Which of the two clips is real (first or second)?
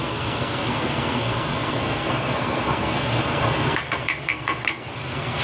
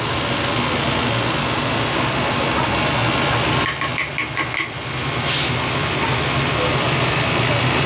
second